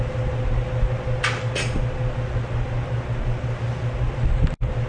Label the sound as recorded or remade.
recorded